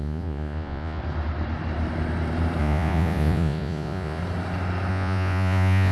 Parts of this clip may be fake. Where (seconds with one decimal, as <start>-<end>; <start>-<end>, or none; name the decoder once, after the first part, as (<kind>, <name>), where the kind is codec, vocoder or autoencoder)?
0.0-1.0 (vocoder, Vocos); 2.6-4.2; 4.9-5.9